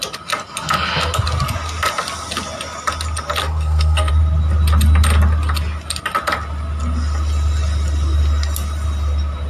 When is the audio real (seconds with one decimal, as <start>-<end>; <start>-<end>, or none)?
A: 0.0-3.4; 4.1-9.5